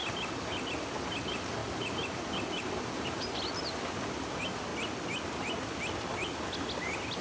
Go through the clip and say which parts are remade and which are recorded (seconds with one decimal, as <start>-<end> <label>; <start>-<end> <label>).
0.0-0.7 recorded; 0.7-4.7 remade; 4.7-7.2 recorded